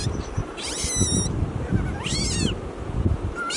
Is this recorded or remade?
recorded